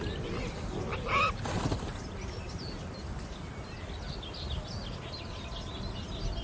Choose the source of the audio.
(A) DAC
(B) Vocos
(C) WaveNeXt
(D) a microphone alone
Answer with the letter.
D